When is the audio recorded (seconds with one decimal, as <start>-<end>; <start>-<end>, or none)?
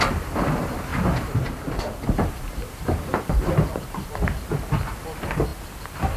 0.0-0.9; 4.6-6.2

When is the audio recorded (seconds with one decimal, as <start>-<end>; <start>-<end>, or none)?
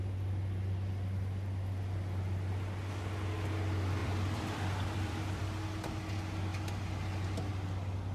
0.0-4.0; 5.4-8.1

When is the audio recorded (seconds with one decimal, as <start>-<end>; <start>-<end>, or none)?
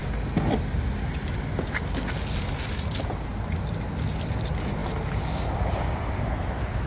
0.0-6.9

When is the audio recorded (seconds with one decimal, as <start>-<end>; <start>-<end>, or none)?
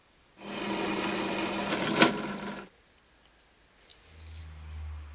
2.9-5.1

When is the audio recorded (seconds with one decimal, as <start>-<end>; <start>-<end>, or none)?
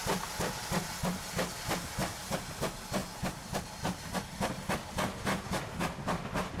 0.0-2.0; 2.5-6.6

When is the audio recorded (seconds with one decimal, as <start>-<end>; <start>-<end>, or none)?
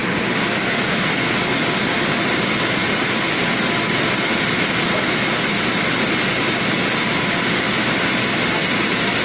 0.0-9.2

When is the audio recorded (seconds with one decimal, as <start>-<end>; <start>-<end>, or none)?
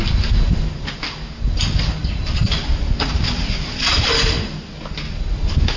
0.0-2.0; 4.6-5.8